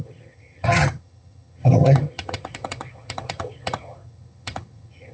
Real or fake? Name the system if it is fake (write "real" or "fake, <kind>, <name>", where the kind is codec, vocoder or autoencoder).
fake, vocoder, HiFi-GAN